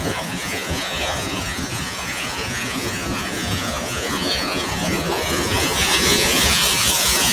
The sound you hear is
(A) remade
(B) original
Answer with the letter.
A